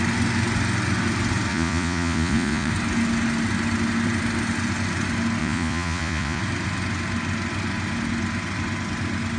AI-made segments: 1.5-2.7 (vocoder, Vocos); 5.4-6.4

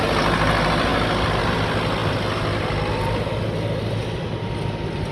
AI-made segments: none